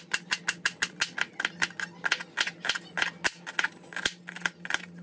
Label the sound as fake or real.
real